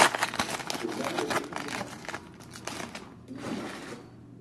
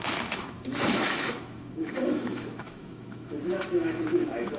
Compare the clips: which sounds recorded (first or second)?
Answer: first